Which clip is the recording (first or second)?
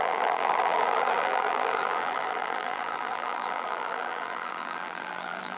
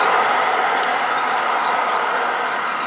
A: second